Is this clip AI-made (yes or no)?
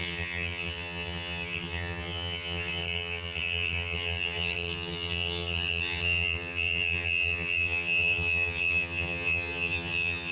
yes